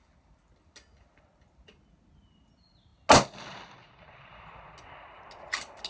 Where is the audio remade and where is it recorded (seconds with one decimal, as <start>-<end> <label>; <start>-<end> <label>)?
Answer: 0.0-5.9 recorded